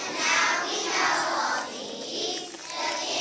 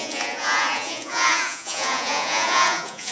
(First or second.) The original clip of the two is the first